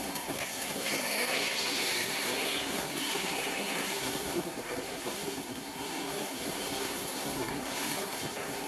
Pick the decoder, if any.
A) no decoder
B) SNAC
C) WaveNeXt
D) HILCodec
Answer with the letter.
B